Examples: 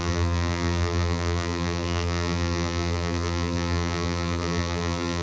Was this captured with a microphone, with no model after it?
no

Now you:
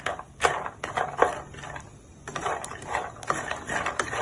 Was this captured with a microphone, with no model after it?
yes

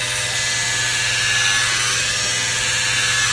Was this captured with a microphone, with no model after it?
yes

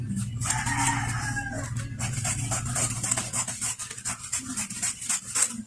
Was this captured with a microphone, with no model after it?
yes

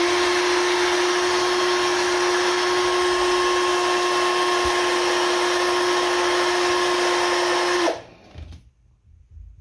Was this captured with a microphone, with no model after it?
yes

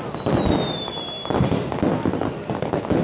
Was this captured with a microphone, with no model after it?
yes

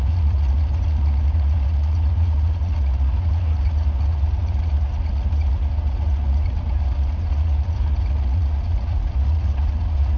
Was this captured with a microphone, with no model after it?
no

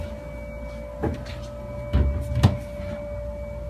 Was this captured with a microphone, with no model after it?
yes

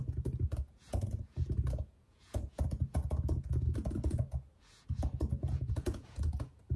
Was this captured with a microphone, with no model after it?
no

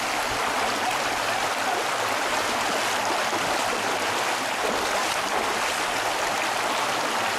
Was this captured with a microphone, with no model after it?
yes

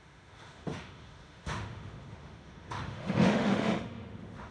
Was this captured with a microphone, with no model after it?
no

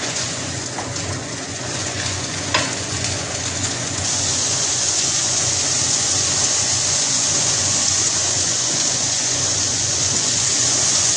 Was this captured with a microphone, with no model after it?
no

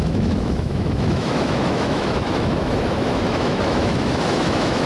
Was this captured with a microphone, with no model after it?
no